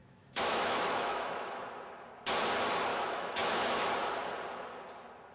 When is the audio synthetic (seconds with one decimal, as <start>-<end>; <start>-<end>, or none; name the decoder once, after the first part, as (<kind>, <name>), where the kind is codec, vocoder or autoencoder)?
0.0-1.7 (autoencoder, DAC-VAE); 2.9-3.9